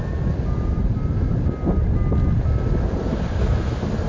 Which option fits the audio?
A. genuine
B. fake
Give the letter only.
A